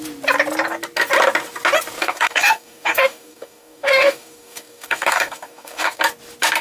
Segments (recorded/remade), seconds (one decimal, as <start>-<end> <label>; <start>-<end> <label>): 0.0-2.0 recorded; 2.0-6.0 remade; 6.0-6.6 recorded